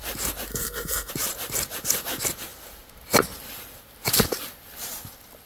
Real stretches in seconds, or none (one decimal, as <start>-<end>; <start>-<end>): 0.0-0.5; 1.1-5.5